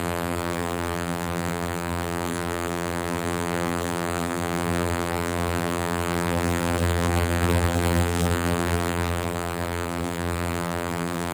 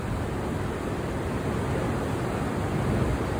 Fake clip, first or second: first